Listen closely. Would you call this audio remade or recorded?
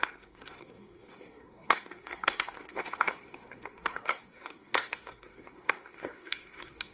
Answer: remade